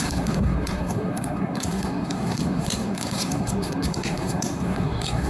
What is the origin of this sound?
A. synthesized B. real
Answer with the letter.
A